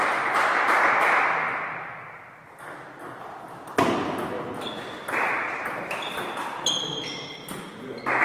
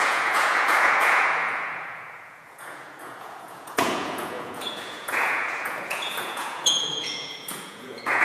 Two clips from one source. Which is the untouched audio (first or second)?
first